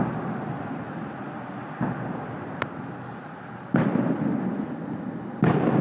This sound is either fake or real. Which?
real